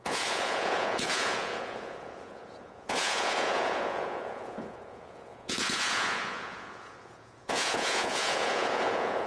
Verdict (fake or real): fake